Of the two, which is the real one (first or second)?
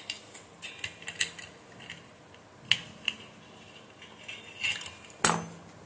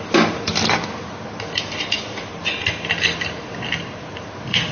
first